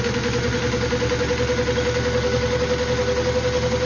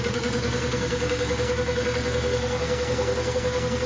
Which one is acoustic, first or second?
first